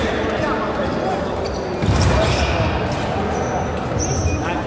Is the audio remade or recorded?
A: recorded